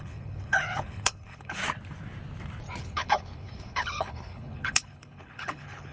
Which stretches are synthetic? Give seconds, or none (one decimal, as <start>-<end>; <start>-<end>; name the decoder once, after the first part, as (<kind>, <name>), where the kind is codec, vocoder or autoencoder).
0.0-1.6 (codec, HILCodec); 2.8-5.9